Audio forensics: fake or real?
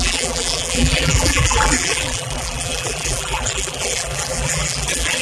fake